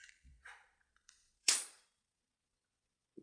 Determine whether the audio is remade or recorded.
remade